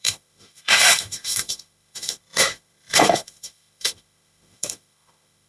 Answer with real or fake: fake